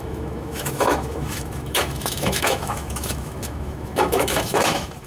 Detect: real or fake fake